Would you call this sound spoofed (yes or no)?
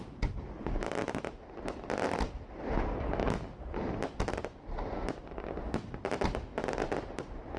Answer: no